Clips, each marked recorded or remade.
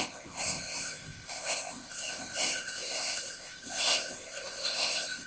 remade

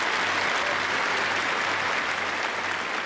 recorded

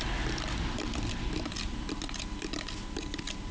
recorded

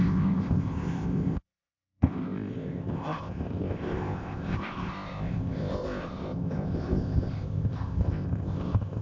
remade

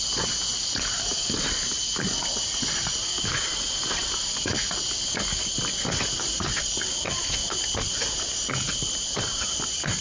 recorded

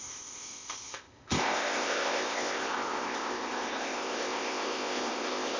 remade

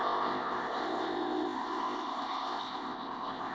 remade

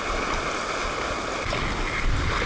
recorded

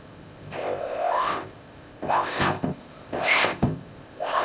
remade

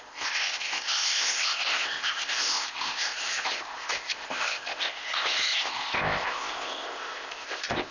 remade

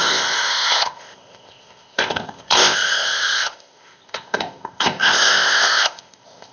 remade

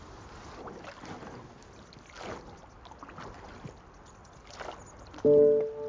recorded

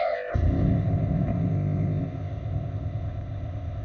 remade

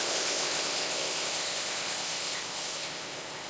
remade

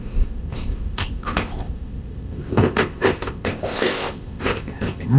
remade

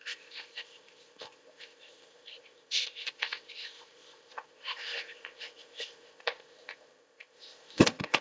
remade